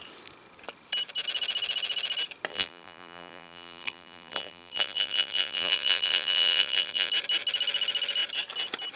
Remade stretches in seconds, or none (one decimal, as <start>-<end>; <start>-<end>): 2.5-7.1